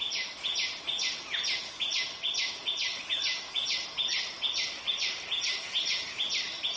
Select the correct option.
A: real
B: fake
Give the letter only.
A